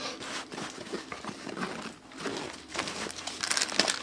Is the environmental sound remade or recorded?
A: recorded